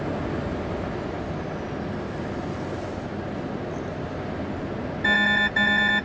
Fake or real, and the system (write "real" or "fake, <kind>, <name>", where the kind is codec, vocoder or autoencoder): real